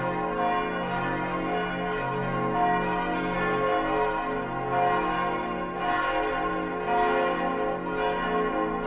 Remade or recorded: recorded